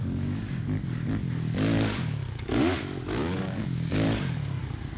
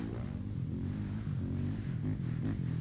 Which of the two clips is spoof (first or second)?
first